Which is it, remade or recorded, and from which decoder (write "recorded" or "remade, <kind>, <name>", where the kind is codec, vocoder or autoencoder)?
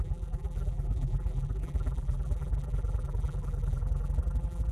remade, vocoder, BigVGAN v2